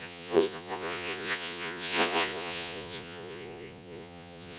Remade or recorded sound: remade